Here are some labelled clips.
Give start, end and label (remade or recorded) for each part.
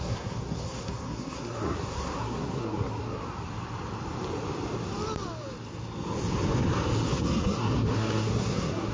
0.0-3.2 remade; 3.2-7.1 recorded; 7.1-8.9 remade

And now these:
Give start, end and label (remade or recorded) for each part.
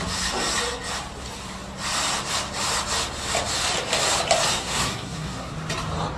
0.0-4.6 recorded; 4.6-5.5 remade; 5.5-6.2 recorded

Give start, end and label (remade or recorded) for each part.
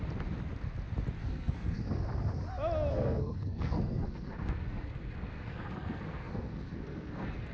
0.0-1.2 recorded; 1.2-2.0 remade; 2.0-2.9 recorded; 2.9-7.5 remade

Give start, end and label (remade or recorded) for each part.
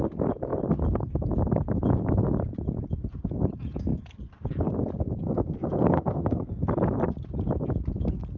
0.0-5.2 recorded; 5.2-6.5 remade; 6.5-8.4 recorded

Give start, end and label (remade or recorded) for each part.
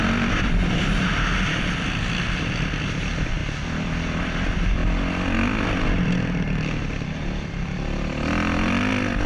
0.0-9.3 recorded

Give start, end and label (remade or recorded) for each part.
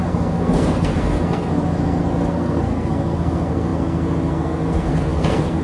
0.0-5.6 remade